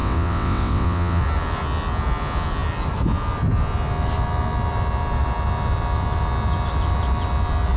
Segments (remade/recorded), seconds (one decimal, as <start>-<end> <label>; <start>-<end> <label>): 0.0-1.2 remade; 1.2-7.8 recorded